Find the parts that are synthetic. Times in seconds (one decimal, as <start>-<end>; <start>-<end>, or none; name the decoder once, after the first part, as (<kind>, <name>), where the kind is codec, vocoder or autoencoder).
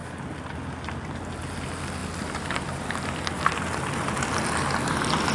0.0-1.3 (vocoder, BigVGAN v2); 2.0-5.3